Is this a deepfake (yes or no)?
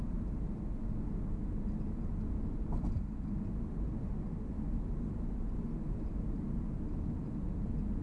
no